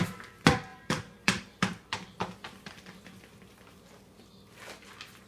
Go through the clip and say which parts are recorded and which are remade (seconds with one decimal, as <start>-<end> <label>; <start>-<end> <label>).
0.0-0.7 recorded; 0.7-3.9 remade; 3.9-5.3 recorded